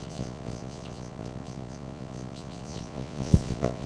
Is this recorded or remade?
remade